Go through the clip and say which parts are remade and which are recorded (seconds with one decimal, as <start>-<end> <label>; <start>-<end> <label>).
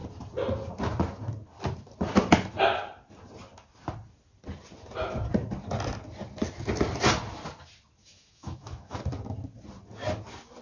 0.0-8.0 recorded; 8.0-9.0 remade; 9.0-10.6 recorded